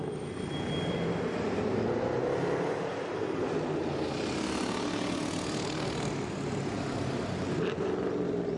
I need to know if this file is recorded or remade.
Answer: recorded